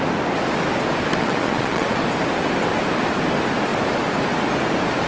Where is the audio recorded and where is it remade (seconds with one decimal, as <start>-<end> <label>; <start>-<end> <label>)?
0.0-1.2 recorded; 1.2-2.0 remade; 2.0-5.1 recorded